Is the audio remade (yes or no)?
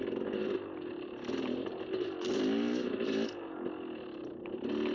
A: no